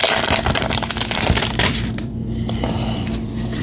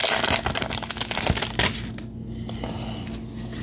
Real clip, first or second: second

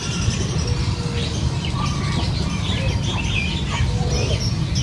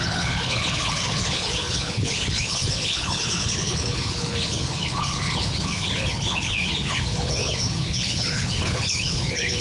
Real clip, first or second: first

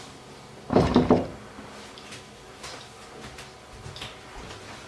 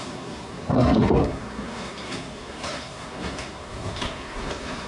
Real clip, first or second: first